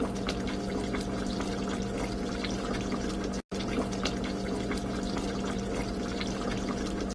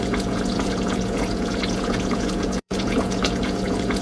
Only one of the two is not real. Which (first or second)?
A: second